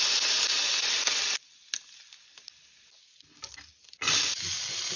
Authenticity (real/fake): real